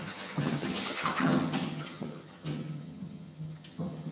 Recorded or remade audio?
remade